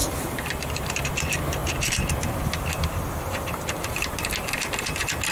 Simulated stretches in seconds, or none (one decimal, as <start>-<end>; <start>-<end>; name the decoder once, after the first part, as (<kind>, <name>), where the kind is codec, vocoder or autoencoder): 0.0-1.1 (vocoder, BigVGAN v2)